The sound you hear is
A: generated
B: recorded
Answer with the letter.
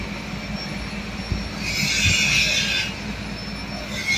B